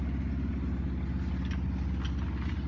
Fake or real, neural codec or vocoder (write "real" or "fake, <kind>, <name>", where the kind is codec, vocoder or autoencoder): real